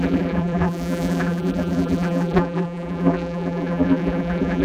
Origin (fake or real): fake